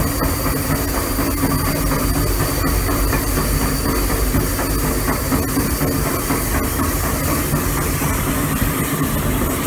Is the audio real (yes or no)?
yes